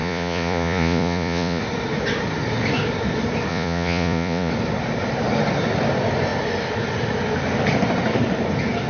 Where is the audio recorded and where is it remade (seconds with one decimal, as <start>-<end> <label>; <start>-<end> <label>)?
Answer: 0.0-1.6 remade; 1.6-3.5 recorded; 3.5-4.5 remade; 4.5-8.9 recorded